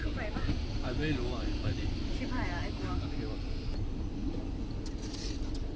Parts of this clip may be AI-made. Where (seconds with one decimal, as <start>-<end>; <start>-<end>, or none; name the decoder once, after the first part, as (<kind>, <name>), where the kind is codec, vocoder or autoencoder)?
none